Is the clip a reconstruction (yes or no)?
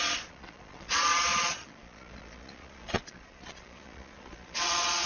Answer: yes